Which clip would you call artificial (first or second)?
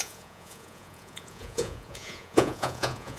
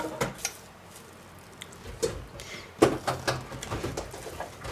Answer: first